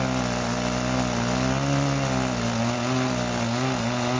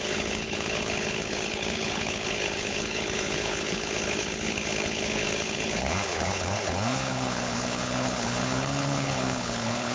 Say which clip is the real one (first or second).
first